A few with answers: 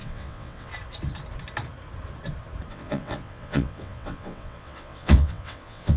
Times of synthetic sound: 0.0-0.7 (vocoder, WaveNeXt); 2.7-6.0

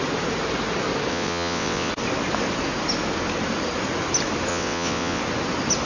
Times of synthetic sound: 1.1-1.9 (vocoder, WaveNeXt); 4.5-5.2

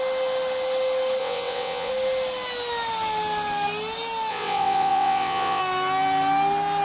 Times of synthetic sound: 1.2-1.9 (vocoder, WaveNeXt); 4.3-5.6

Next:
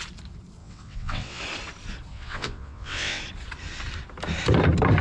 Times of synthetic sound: 0.6-1.4 (vocoder, WaveNeXt); 2.1-3.2

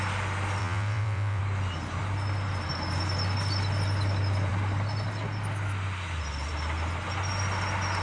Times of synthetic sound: 0.6-1.4 (vocoder, WaveNeXt)